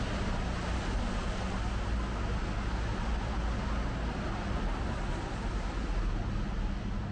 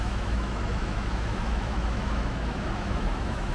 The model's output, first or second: second